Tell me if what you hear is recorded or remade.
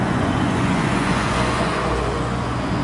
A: remade